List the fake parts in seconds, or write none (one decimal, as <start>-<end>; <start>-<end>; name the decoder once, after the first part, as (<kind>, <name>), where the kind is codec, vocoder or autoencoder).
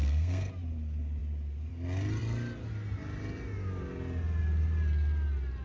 0.0-0.5 (codec, SNAC)